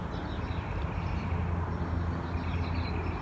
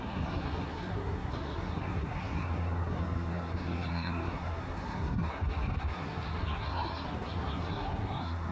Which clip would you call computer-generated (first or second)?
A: second